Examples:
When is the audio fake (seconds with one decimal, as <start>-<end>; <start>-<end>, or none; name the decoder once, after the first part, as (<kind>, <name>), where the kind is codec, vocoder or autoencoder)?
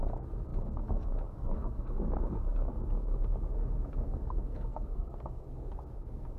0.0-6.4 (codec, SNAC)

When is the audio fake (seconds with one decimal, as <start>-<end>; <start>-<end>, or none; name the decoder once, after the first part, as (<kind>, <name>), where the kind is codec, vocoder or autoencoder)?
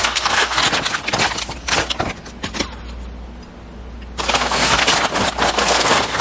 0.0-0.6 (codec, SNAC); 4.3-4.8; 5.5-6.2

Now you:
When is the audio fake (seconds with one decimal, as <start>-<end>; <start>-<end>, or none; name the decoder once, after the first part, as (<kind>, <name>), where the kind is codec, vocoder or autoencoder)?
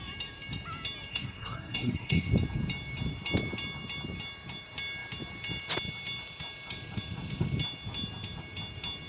1.1-2.3 (codec, SNAC)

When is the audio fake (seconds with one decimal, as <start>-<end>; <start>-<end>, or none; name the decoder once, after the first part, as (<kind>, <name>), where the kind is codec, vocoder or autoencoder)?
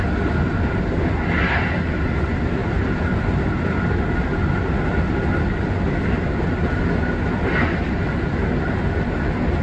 none